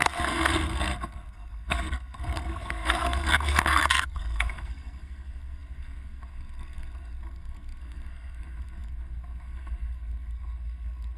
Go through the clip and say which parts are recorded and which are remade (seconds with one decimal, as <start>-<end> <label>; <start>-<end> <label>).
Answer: 0.0-11.2 remade